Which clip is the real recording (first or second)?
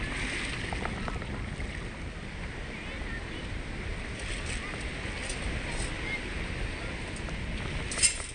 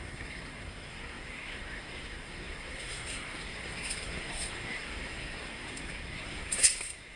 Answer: first